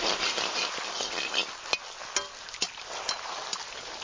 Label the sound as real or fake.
real